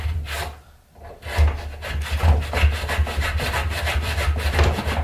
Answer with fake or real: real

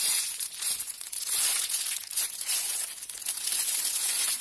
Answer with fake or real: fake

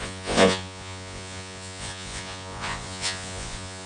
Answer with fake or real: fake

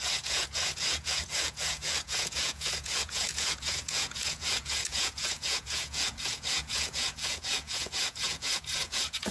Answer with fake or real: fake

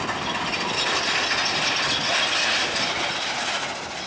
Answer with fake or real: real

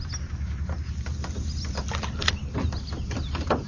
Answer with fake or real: real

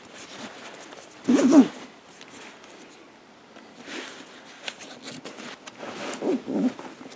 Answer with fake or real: real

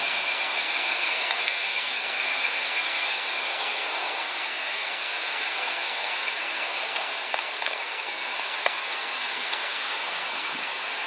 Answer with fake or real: fake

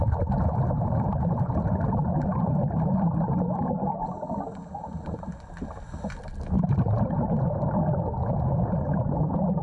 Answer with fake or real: real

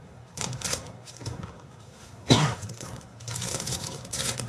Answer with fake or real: fake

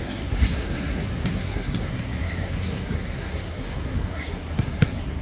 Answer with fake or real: fake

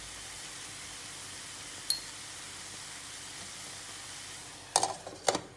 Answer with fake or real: real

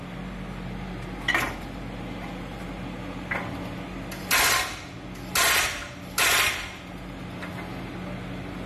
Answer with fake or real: real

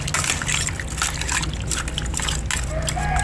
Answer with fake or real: real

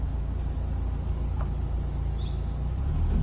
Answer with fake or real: real